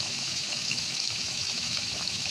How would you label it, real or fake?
fake